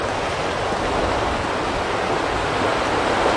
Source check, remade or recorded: recorded